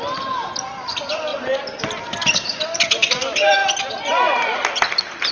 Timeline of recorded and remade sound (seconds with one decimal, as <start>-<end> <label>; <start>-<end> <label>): 0.0-5.3 recorded